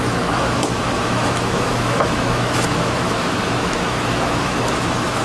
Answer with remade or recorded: remade